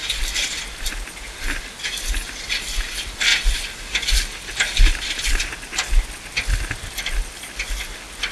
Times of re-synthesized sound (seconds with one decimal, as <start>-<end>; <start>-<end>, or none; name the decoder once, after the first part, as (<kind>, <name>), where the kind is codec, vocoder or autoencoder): none